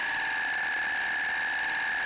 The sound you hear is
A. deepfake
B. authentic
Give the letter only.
B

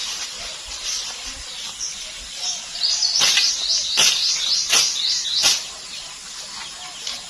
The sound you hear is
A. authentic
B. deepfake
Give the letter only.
A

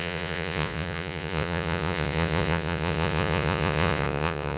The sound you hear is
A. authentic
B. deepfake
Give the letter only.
B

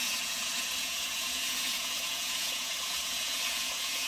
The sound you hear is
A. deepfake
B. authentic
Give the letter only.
A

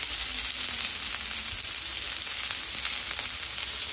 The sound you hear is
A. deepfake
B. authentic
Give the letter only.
B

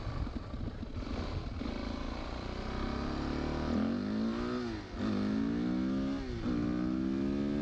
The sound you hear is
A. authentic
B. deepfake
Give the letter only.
A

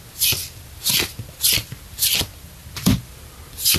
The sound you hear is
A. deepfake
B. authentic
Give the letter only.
B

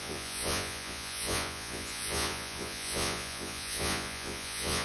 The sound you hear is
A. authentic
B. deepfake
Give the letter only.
B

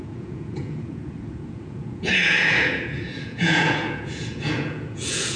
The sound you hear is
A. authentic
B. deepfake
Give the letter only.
B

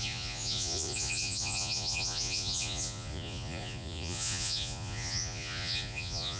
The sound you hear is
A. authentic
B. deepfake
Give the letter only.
B